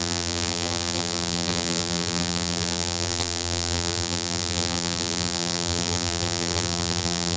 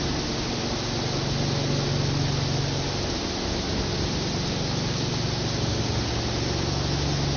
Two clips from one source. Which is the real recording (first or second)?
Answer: second